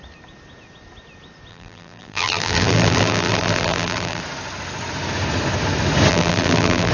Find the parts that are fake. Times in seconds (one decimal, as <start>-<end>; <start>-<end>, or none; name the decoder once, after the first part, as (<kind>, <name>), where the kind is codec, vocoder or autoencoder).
1.5-4.2 (vocoder, BigVGAN v2); 6.1-6.9